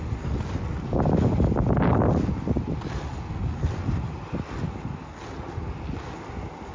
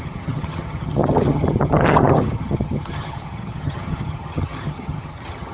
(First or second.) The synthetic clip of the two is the second